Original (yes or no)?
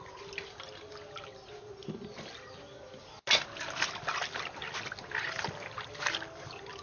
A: yes